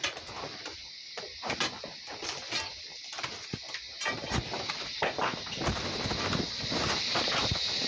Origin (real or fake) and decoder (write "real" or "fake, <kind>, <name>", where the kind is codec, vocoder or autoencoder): real